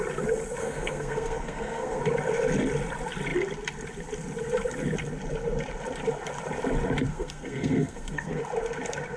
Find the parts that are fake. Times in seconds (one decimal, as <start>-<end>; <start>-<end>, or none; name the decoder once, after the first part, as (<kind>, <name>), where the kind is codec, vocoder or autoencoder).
0.6-2.0 (codec, SNAC); 7.1-8.4